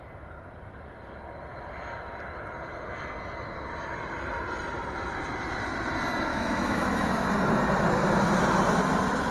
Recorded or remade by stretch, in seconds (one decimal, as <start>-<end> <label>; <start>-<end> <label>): 0.0-6.3 recorded; 6.3-7.3 remade; 7.3-9.3 recorded